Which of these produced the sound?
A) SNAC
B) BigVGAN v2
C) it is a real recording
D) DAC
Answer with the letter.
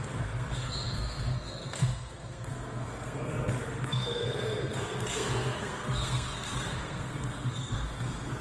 A